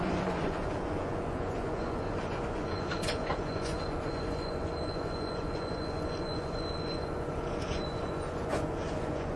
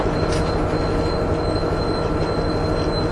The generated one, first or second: first